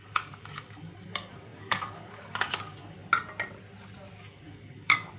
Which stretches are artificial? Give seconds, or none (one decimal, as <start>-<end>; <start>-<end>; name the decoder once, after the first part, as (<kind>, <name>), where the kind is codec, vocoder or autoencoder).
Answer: 0.0-3.0 (codec, DAC); 4.2-5.2